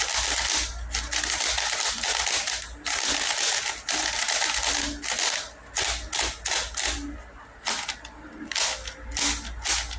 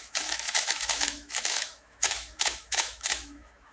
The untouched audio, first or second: first